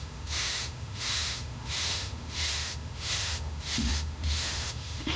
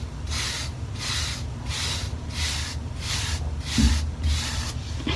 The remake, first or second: first